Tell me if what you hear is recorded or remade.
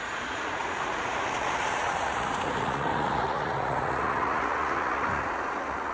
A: remade